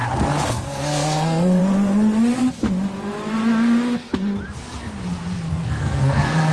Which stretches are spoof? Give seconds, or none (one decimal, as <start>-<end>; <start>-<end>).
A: 0.5-1.6; 5.5-6.5